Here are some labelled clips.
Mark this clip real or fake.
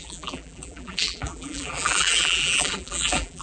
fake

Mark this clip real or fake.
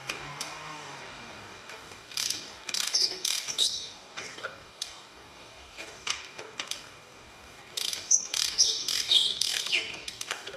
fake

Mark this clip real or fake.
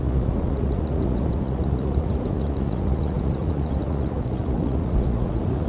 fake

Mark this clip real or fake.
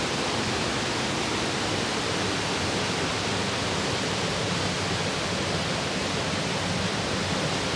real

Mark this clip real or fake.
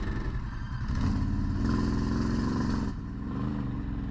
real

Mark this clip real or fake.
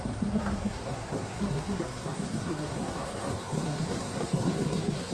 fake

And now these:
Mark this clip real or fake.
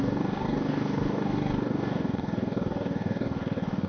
fake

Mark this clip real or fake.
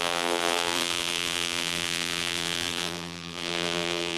fake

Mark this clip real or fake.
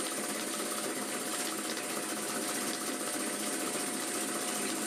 real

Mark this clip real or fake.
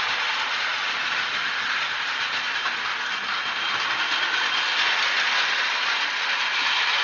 real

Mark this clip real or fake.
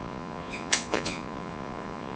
fake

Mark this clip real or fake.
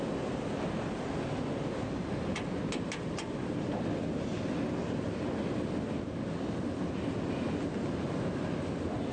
real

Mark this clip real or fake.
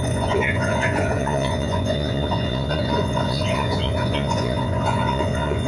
fake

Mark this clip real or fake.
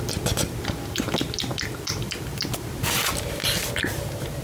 real